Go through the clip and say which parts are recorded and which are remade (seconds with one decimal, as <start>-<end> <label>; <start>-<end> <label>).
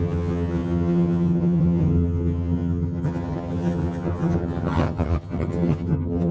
0.0-6.3 remade